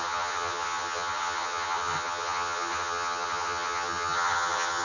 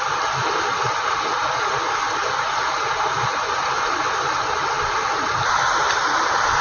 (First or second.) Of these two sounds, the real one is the second